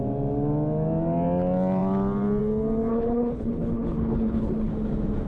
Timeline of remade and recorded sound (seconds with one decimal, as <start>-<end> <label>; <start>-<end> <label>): 0.0-2.9 recorded; 2.9-4.7 remade; 4.7-5.3 recorded